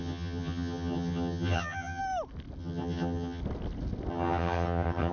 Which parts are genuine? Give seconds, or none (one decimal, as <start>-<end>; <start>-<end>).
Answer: 2.0-2.6; 3.4-4.1